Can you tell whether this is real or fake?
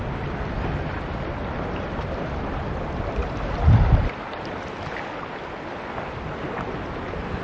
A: real